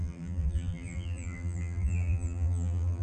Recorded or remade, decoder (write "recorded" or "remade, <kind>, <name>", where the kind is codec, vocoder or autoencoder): remade, vocoder, BigVGAN v2